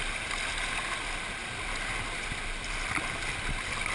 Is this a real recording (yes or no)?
yes